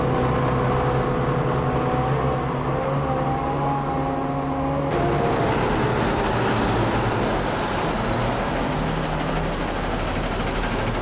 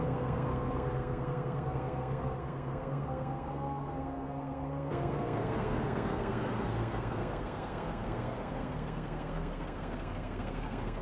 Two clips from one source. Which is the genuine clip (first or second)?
first